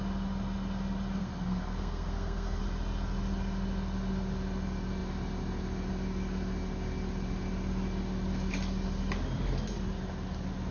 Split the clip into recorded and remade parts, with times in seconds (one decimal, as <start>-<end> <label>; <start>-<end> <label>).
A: 0.0-1.2 recorded; 1.2-2.6 remade; 2.6-10.7 recorded